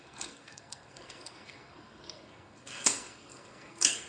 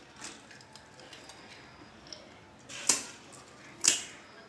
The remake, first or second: first